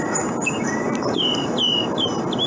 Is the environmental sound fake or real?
real